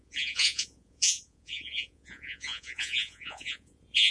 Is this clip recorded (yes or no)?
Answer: no